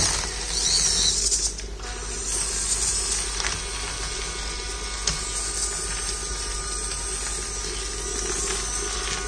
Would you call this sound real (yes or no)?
yes